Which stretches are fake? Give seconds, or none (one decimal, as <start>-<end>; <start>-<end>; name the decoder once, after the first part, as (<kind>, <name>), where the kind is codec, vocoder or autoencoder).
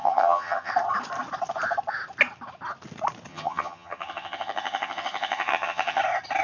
0.0-0.7 (vocoder, HiFi-GAN); 3.3-6.0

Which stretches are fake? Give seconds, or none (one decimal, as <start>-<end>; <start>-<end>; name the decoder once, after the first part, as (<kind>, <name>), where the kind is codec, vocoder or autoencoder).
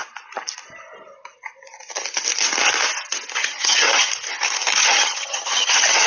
3.4-4.1 (vocoder, HiFi-GAN); 4.8-6.1